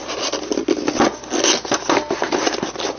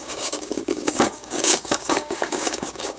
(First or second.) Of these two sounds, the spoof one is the second